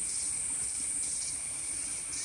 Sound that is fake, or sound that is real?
fake